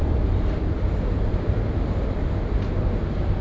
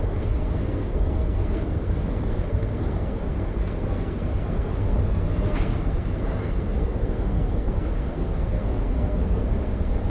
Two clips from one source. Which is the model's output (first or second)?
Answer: second